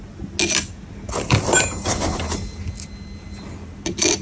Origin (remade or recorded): recorded